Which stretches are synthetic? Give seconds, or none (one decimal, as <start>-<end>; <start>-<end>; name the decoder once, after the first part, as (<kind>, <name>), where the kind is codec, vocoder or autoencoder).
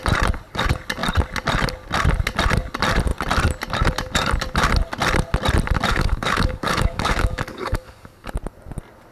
5.9-8.3 (codec, DAC)